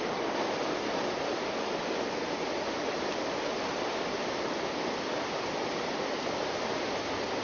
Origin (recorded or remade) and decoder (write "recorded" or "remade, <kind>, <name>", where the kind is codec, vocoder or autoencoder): remade, vocoder, BigVGAN v2